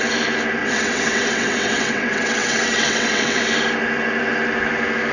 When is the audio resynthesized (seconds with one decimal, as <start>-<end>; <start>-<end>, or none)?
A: 0.6-3.4